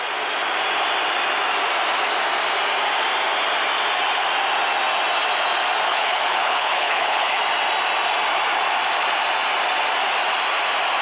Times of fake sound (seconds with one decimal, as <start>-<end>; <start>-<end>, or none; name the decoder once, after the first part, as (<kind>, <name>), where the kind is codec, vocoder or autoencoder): 5.9-7.4 (codec, HILCodec)